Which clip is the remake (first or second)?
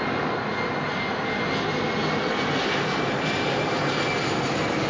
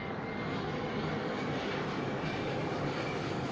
second